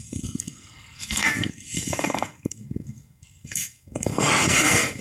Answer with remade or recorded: remade